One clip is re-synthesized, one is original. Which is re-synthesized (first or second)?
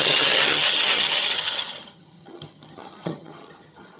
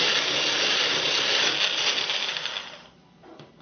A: first